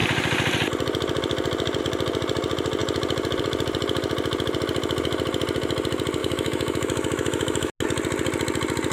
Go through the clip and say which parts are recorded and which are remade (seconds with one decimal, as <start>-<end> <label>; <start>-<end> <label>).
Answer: 0.0-6.2 recorded; 6.2-7.7 remade; 7.7-8.9 recorded

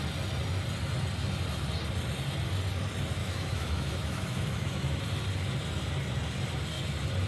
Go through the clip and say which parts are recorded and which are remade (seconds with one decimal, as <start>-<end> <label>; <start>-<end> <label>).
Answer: 0.0-3.2 recorded; 3.2-5.0 remade; 5.0-7.3 recorded